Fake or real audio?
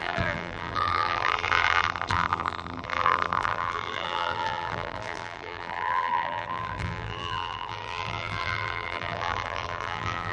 fake